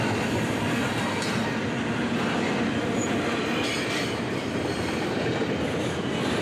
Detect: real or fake fake